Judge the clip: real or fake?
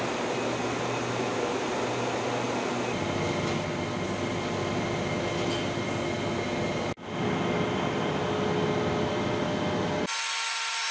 real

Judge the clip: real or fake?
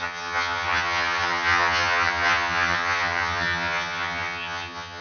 fake